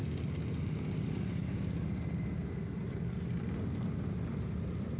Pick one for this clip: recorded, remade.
recorded